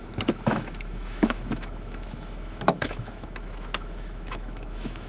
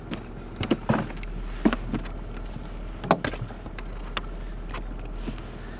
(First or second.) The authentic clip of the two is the second